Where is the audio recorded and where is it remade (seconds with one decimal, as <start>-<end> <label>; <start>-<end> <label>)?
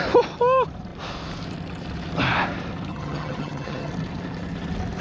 0.0-2.9 recorded; 2.9-3.9 remade; 3.9-5.0 recorded